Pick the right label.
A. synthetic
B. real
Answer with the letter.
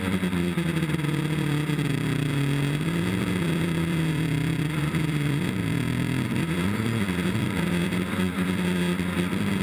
A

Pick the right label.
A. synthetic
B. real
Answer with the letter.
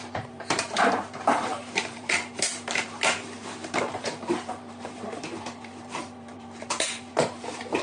A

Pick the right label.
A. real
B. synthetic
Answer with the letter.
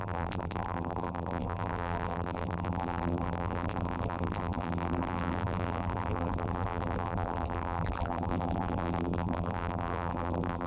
B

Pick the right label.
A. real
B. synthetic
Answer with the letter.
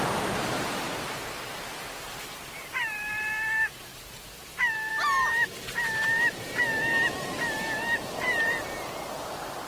B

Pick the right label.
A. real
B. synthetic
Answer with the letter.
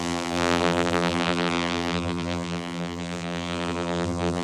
B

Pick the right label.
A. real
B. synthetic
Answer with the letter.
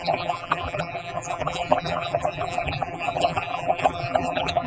B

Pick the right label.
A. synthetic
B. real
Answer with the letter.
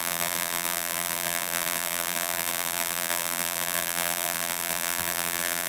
A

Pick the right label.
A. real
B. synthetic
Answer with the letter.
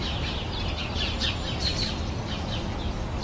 A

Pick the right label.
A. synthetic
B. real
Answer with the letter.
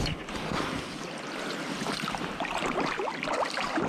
B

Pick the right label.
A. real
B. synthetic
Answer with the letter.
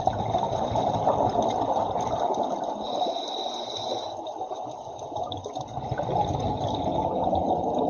A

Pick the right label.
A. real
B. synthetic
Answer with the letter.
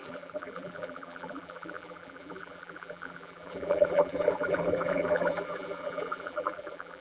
B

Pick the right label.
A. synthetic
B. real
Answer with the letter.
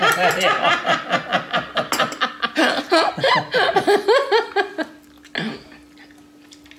B